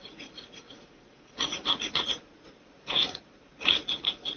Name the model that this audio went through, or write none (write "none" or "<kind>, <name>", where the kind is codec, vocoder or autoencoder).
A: vocoder, Vocos